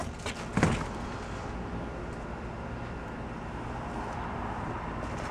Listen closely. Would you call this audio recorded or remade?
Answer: recorded